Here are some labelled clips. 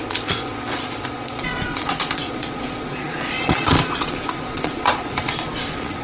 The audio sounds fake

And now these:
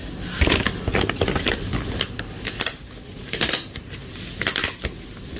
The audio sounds real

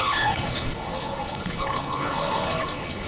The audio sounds fake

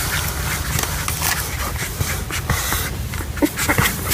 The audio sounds real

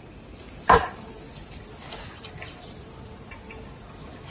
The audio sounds real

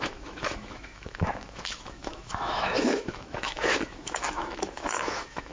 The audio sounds fake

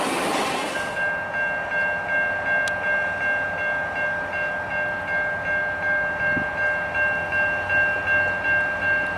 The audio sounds real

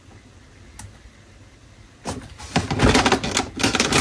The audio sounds real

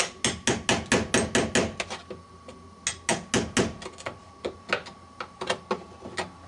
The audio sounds real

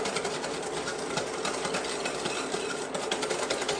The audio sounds real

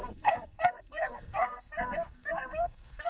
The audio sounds fake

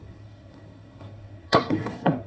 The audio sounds fake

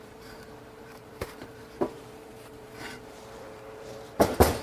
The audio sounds fake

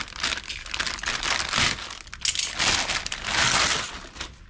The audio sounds real